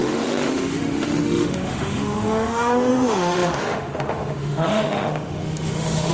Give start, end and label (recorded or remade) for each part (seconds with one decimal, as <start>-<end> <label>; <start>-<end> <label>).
0.0-6.1 remade